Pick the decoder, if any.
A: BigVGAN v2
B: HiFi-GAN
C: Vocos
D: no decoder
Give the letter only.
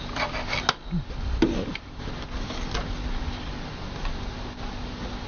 D